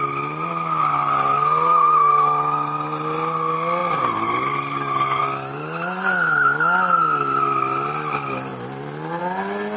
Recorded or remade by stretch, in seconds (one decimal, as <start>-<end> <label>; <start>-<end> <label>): 0.0-9.8 recorded